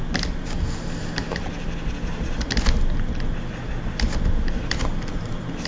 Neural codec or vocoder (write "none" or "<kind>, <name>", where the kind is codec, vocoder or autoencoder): none